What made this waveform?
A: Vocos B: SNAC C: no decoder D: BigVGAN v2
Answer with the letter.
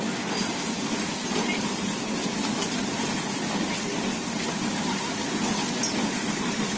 C